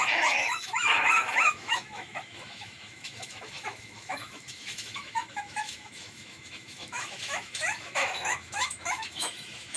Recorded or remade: remade